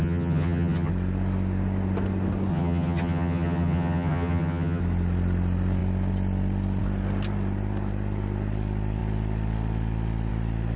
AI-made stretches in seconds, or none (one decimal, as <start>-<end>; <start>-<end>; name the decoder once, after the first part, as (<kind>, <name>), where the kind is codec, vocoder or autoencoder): 0.0-0.9 (vocoder, HiFi-GAN); 2.5-4.8